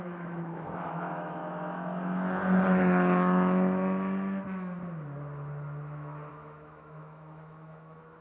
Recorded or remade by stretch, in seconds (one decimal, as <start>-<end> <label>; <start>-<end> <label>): 0.0-1.4 remade; 1.4-6.3 recorded; 6.3-8.2 remade